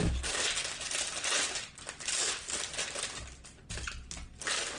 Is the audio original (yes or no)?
yes